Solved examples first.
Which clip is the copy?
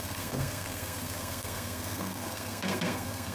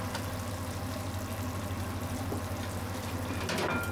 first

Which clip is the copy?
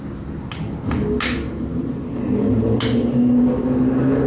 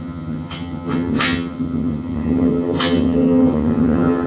second